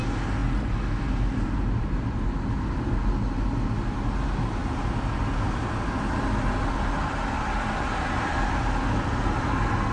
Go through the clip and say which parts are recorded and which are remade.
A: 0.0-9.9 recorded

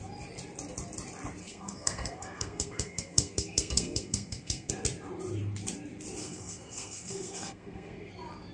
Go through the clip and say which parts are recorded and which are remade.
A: 0.0-1.4 recorded; 1.4-4.7 remade; 4.7-6.2 recorded; 6.2-8.1 remade; 8.1-8.5 recorded

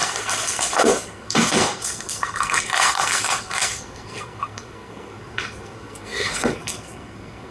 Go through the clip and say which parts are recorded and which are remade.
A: 0.0-7.5 remade